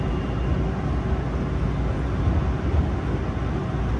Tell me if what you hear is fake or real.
real